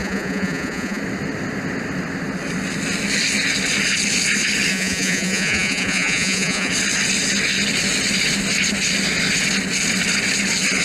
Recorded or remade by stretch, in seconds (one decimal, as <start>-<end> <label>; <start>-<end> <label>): 0.0-1.0 remade; 1.0-4.7 recorded; 4.7-6.7 remade; 6.7-10.8 recorded